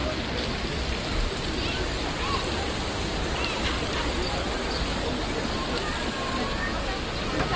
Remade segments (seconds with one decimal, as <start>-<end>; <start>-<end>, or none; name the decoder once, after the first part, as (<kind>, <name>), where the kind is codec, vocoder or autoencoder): none